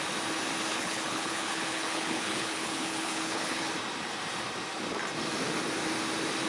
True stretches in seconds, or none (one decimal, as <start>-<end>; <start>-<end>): 0.0-0.7; 3.7-6.5